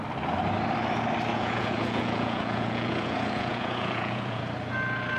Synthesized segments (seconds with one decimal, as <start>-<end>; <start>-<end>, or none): 1.3-4.4